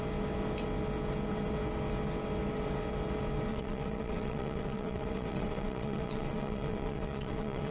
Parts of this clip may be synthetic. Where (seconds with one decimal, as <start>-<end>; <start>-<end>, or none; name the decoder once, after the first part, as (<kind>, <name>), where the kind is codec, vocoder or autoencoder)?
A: 3.5-7.7 (vocoder, WaveNeXt)